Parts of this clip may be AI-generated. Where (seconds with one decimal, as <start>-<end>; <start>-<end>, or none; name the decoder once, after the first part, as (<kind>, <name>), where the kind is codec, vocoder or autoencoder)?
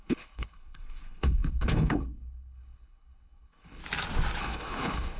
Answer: 0.0-3.8 (codec, HILCodec); 4.4-5.2